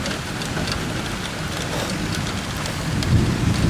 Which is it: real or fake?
real